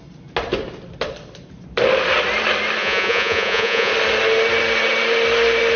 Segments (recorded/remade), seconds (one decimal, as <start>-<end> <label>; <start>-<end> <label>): 0.0-2.8 recorded; 2.8-3.9 remade; 3.9-5.8 recorded